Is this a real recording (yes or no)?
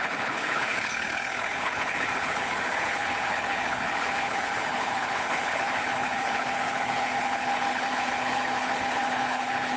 no